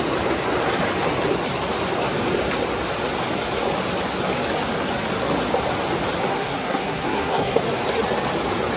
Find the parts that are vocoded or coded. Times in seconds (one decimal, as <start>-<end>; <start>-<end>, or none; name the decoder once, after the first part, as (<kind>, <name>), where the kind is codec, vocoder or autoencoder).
6.3-7.6 (codec, SNAC)